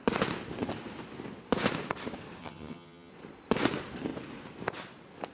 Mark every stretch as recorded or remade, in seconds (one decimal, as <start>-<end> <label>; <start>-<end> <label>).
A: 0.0-2.4 recorded; 2.4-3.1 remade; 3.1-5.3 recorded